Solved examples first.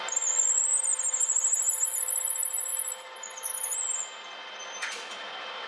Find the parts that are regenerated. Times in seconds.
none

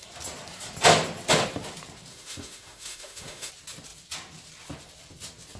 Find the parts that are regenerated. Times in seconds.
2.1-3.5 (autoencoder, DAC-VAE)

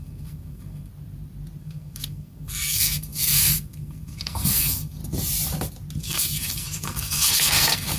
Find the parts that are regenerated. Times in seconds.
0.0-0.9 (codec, SNAC); 1.6-5.0; 6.0-8.0

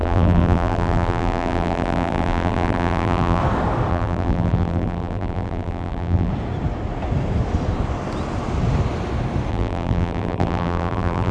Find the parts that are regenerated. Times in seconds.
0.0-3.4 (vocoder, BigVGAN v2); 3.9-6.3; 9.5-11.3

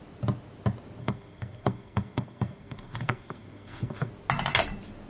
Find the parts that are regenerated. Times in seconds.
1.0-4.1 (codec, SNAC)

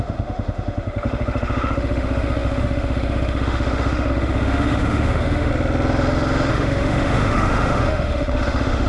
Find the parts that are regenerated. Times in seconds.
0.0-5.5 (autoencoder, DAC-VAE); 6.5-8.9